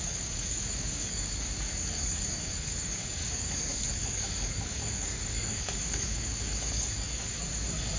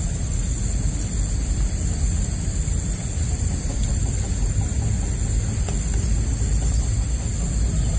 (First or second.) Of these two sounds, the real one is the second